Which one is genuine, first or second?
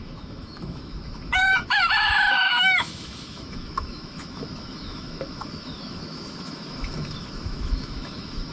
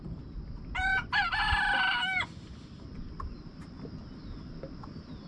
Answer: second